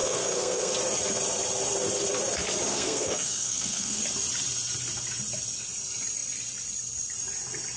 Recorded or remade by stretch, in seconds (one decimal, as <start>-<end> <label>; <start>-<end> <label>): 0.0-0.7 remade; 0.7-2.7 recorded; 2.7-4.0 remade; 4.0-7.8 recorded